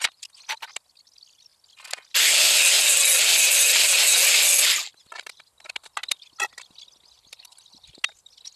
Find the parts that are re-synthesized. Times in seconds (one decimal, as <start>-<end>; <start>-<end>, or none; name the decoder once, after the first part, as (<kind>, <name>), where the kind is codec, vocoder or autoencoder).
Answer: none